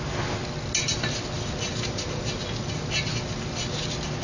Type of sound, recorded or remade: recorded